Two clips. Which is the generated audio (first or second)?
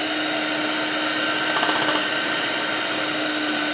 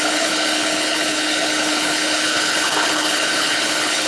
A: second